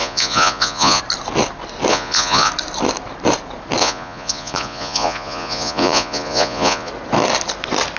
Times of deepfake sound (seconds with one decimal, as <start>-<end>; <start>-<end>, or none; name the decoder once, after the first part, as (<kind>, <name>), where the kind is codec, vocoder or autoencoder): 0.0-1.0 (vocoder, Vocos); 1.9-2.5; 3.8-6.9